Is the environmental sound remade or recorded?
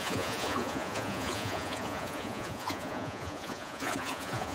remade